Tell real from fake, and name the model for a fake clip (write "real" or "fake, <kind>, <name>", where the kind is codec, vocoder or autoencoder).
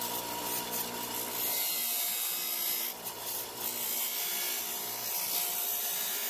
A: real